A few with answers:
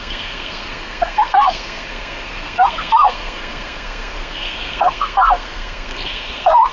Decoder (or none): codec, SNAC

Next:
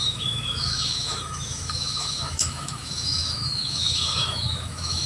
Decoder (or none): autoencoder, DAC-VAE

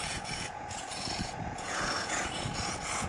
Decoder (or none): vocoder, Vocos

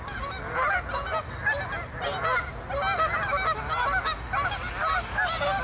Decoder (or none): none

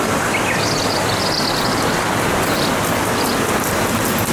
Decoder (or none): none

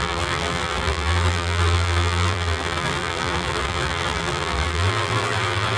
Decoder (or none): vocoder, BigVGAN v2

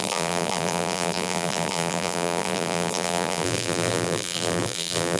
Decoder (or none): vocoder, BigVGAN v2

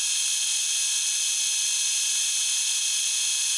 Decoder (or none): none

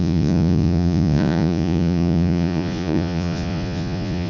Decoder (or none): vocoder, Vocos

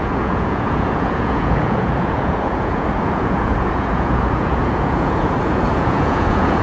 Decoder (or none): vocoder, Vocos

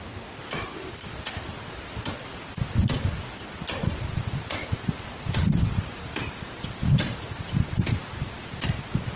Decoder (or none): vocoder, BigVGAN v2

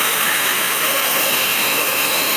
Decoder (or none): autoencoder, DAC-VAE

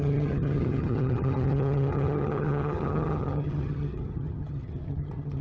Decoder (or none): vocoder, HiFi-GAN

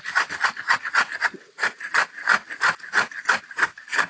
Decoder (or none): none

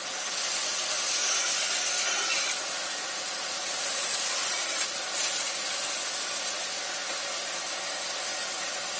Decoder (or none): none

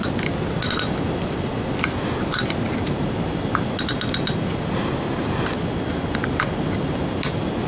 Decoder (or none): none